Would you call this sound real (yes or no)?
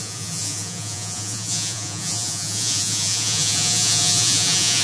no